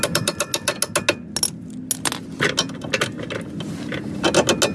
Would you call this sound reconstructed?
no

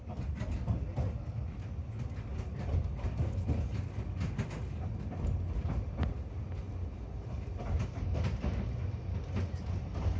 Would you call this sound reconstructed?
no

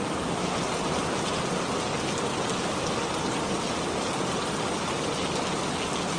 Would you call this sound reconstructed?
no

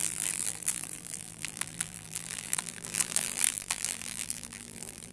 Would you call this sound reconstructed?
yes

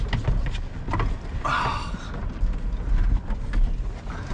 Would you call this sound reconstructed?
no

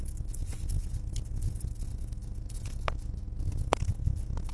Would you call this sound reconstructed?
no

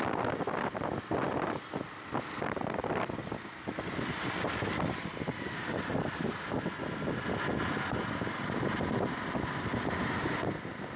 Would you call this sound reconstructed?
no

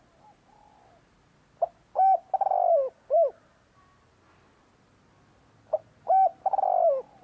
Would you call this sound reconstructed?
no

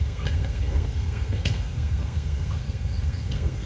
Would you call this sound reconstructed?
yes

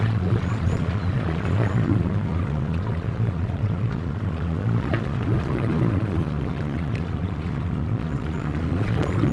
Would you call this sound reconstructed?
yes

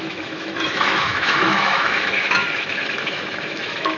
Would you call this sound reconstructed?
yes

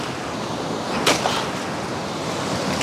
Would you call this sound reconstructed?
no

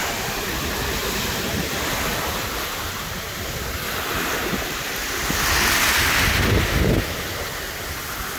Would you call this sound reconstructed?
no